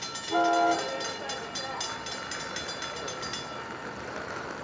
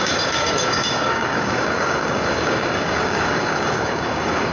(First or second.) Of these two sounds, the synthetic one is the second